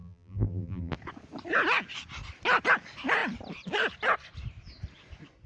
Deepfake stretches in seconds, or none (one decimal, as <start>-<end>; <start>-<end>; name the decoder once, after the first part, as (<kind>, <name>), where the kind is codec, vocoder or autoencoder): 0.0-0.9 (vocoder, BigVGAN v2)